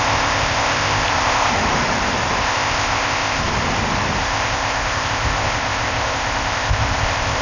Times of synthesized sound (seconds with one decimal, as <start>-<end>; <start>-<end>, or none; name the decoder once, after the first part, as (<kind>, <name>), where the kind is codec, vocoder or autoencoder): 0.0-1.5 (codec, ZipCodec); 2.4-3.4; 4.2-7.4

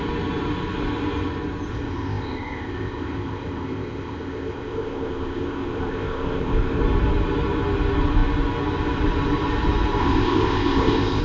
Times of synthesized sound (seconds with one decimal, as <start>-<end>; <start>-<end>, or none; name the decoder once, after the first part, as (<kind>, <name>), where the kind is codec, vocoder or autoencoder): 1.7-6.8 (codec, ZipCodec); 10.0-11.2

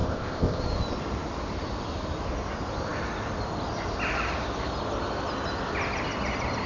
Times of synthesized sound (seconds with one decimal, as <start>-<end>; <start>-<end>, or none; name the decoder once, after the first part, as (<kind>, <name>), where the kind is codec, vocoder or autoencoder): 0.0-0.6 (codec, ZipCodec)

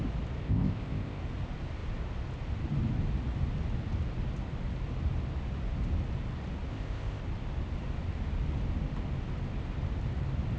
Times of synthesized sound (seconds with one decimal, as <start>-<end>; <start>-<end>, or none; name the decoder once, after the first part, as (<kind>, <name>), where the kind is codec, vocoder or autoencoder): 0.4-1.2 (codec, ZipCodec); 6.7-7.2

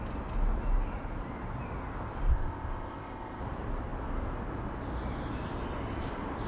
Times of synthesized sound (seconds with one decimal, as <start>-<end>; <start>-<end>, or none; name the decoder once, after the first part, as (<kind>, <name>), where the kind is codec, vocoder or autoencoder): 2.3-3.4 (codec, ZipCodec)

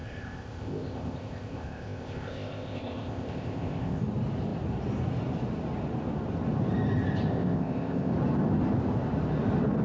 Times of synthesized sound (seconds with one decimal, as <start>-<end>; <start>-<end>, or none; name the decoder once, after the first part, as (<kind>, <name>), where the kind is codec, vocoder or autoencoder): 0.0-4.0 (codec, ZipCodec); 7.3-8.1